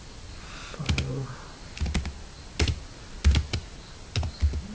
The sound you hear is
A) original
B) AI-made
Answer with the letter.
A